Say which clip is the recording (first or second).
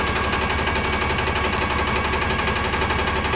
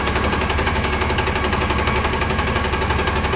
first